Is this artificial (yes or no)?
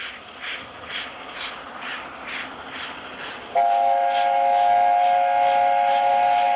no